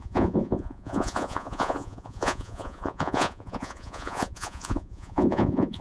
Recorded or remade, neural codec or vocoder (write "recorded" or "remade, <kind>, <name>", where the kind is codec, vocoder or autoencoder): remade, vocoder, Vocos